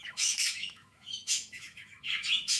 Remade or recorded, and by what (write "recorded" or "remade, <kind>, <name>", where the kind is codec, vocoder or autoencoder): remade, autoencoder, DAC-VAE